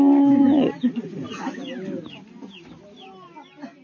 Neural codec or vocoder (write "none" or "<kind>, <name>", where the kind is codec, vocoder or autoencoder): none